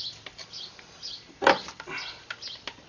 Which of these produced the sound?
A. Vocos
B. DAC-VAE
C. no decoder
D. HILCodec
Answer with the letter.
C